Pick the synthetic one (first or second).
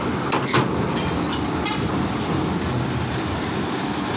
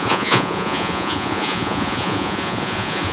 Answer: second